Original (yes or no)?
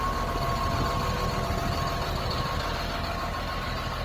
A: yes